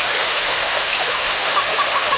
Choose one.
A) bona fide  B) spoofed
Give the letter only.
B